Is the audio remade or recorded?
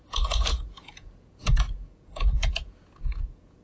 remade